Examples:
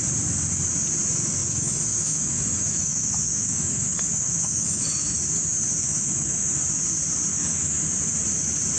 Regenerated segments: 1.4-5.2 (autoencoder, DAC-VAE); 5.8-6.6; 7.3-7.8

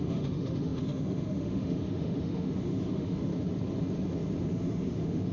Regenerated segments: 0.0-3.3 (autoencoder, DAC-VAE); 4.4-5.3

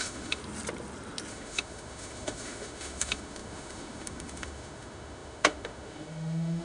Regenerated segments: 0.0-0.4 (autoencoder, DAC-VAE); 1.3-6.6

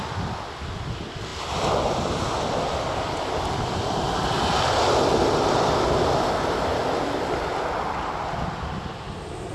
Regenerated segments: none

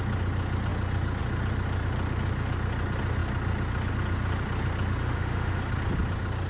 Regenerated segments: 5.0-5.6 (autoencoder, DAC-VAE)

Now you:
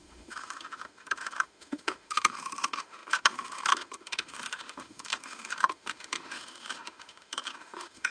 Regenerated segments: 0.0-8.1 (autoencoder, DAC-VAE)

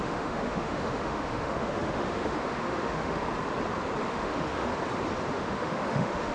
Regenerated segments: 0.0-3.2 (autoencoder, DAC-VAE); 4.1-4.7; 5.3-6.3